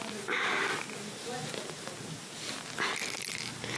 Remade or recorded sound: recorded